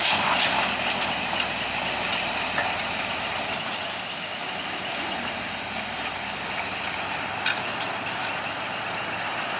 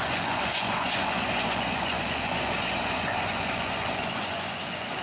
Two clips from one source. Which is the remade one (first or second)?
second